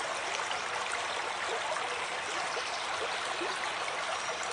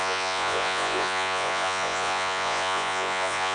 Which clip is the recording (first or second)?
first